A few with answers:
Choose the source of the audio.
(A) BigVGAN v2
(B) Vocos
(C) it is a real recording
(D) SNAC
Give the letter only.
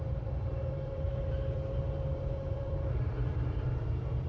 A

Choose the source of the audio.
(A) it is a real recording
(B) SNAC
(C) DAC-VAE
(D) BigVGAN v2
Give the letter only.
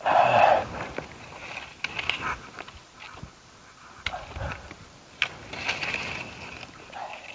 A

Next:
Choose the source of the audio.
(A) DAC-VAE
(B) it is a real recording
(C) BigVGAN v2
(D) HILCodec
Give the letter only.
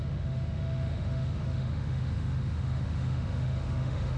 A